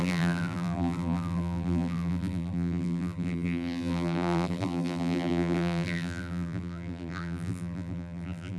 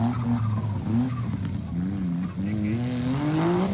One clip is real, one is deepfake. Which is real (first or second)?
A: second